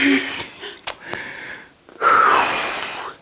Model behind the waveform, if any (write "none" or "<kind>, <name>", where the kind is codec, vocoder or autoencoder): none